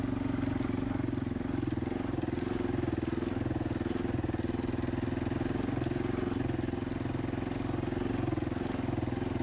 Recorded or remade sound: recorded